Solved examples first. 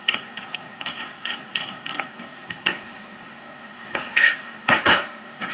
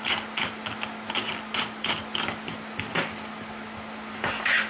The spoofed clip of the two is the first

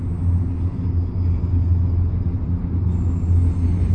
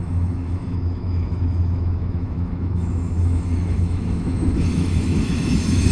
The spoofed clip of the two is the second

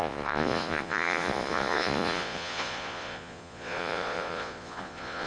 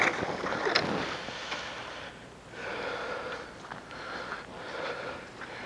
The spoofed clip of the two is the first